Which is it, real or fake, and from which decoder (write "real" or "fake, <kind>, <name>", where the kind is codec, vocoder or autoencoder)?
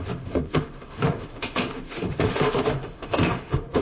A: fake, autoencoder, DAC-VAE